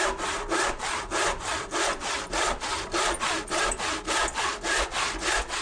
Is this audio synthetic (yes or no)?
no